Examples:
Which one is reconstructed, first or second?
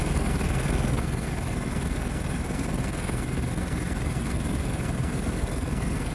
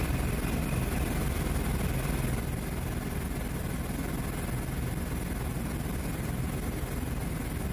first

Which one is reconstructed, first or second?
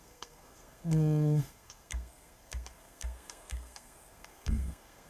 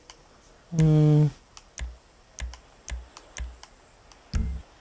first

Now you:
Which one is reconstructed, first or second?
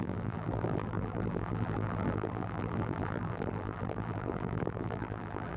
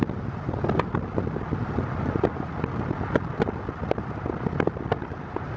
first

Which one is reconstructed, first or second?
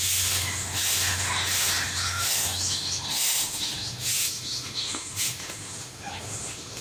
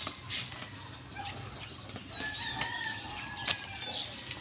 first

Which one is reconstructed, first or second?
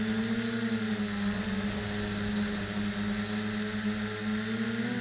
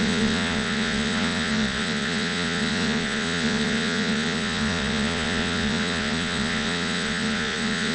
second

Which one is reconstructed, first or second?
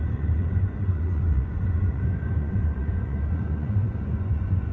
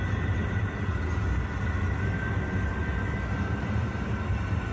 first